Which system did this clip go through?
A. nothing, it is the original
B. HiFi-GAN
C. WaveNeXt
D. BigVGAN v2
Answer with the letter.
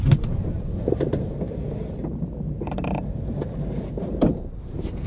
D